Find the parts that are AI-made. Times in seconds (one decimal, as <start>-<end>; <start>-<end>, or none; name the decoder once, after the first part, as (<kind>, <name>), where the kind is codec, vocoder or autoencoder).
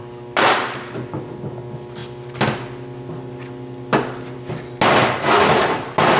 none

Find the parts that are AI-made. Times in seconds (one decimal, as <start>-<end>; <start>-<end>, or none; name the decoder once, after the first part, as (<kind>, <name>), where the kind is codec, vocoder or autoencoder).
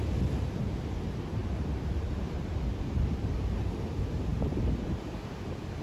1.4-3.0 (vocoder, BigVGAN v2); 4.3-5.0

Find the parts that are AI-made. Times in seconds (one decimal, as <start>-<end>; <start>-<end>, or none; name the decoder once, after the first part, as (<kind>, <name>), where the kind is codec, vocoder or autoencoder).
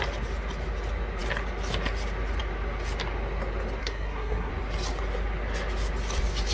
3.8-4.5 (codec, SNAC)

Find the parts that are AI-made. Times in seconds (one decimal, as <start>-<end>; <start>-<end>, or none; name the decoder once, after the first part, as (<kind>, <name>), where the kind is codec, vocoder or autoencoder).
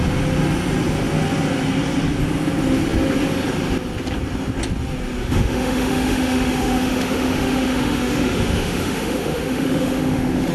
5.2-10.5 (autoencoder, DAC-VAE)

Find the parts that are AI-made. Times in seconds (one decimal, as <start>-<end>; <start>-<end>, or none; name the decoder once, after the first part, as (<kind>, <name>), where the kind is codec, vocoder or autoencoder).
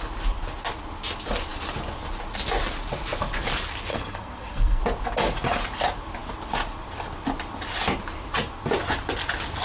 3.9-4.8 (codec, SNAC)